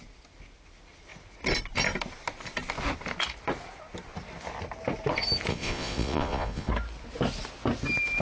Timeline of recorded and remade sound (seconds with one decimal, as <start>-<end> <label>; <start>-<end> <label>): 0.0-5.5 recorded; 5.5-6.7 remade; 6.7-8.2 recorded